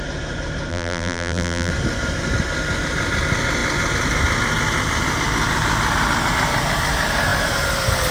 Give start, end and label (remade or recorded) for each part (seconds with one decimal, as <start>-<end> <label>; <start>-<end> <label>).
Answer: 0.0-0.7 recorded; 0.7-1.7 remade; 1.7-8.1 recorded